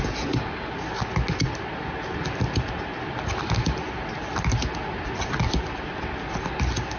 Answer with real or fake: real